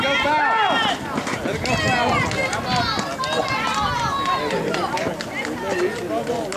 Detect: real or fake real